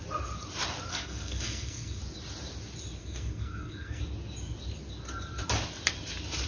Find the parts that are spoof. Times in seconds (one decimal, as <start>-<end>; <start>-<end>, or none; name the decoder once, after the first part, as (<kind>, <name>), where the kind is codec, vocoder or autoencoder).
0.9-2.0 (codec, SNAC); 3.0-4.0